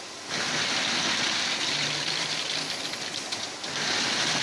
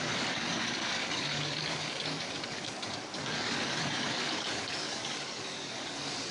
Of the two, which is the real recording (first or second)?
first